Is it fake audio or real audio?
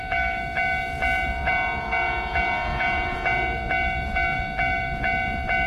fake